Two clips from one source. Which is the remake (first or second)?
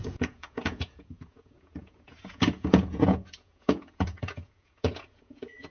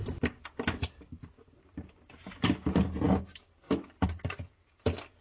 first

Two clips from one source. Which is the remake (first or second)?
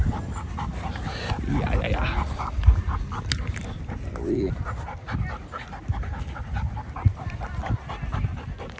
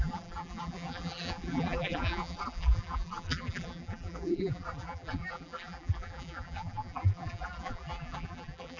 second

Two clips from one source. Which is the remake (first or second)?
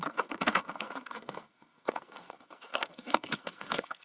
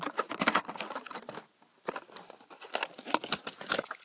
first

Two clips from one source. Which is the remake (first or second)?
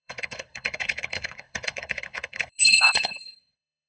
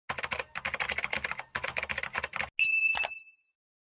first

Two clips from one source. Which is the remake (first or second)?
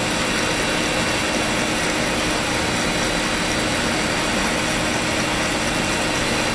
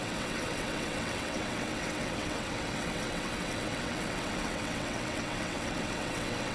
second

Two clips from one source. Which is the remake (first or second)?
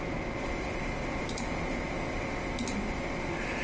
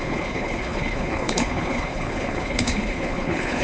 second